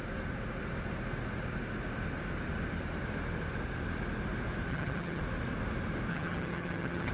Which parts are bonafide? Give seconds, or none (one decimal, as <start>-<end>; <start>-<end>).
0.0-4.7; 5.2-6.1